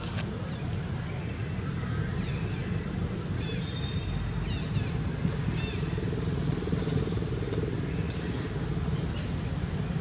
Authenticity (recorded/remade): recorded